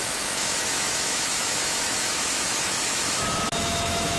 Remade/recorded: remade